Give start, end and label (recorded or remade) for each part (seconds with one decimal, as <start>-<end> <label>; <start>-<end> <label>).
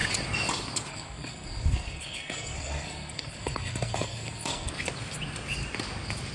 0.0-0.9 recorded; 0.9-4.7 remade; 4.7-6.3 recorded